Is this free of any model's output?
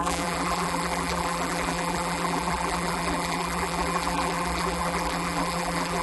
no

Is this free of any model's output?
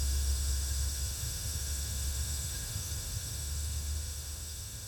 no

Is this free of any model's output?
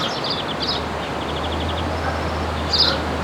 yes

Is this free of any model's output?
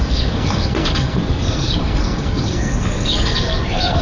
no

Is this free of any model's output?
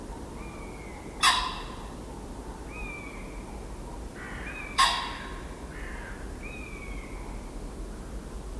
yes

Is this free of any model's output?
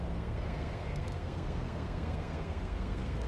no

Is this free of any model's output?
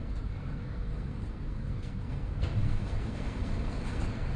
no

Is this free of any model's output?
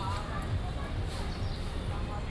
yes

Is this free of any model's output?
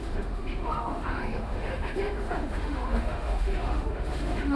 no